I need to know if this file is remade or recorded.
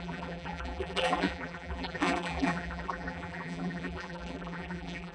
remade